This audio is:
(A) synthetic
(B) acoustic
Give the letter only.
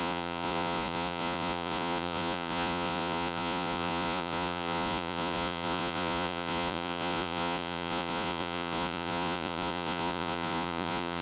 A